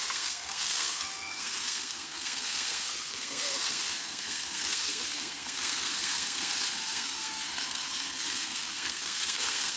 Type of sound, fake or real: fake